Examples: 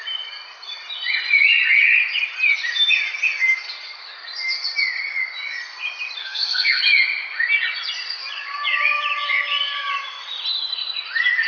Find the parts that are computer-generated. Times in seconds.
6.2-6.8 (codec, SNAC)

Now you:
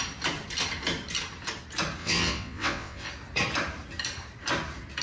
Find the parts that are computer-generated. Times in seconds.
2.0-3.1 (vocoder, WaveNeXt)

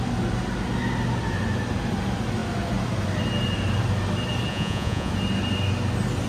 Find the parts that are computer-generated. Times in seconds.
4.5-5.1 (vocoder, Vocos)

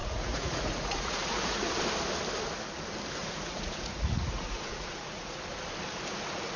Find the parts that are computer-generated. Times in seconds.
0.0-1.7 (vocoder, Vocos); 3.2-5.4

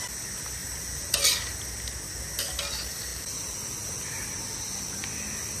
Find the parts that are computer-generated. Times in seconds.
0.6-1.2 (vocoder, BigVGAN v2); 3.1-3.9

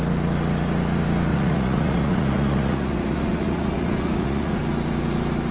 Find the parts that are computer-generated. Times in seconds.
1.3-4.6 (vocoder, Vocos)